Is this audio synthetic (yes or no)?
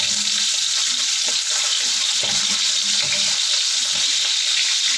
no